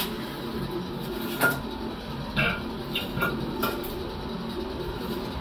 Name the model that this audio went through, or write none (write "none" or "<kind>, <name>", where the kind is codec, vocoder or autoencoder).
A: none